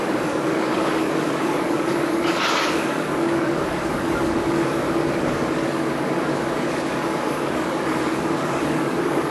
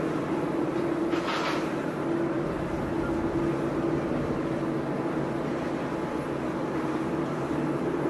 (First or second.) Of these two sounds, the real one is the second